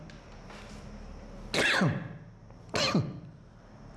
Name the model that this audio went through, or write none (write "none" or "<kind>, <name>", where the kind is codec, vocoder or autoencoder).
none